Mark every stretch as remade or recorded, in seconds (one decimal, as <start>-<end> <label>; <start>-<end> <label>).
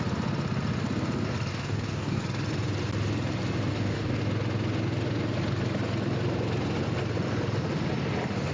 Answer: 0.0-1.5 recorded; 1.5-2.2 remade; 2.2-3.7 recorded; 3.7-4.2 remade; 4.2-8.5 recorded